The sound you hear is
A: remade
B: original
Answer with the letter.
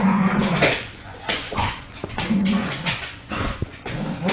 A